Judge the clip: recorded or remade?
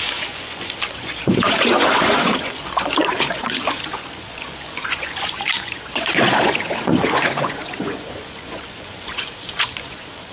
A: remade